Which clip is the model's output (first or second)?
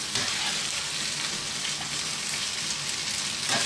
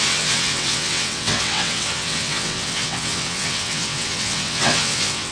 second